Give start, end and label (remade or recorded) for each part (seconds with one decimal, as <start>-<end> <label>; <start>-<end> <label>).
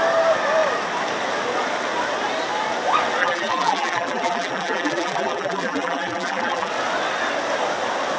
0.0-3.2 recorded; 3.2-6.7 remade; 6.7-8.2 recorded